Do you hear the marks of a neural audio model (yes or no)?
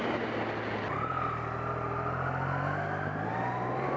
no